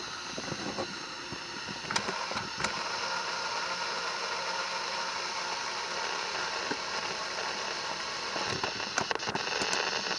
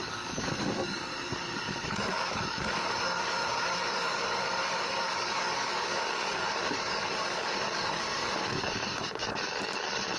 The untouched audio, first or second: first